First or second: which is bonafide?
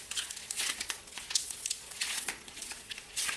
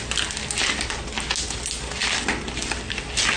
second